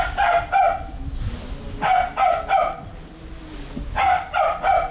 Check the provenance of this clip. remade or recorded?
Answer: recorded